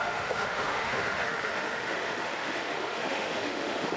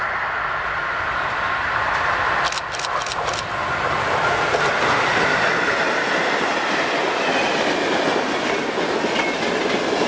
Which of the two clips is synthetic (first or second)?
first